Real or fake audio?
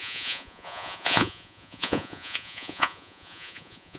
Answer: fake